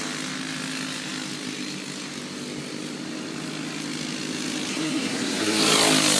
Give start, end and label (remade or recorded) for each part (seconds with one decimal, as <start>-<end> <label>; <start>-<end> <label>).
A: 0.0-4.7 recorded; 4.7-5.6 remade; 5.6-6.2 recorded